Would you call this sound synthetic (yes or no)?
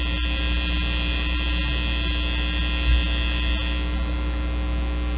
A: no